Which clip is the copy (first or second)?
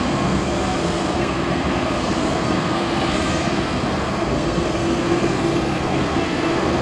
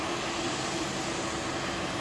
first